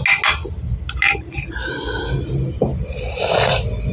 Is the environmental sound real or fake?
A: real